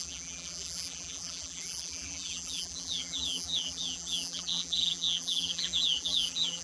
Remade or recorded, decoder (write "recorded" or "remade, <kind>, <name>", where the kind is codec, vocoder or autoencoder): remade, vocoder, BigVGAN v2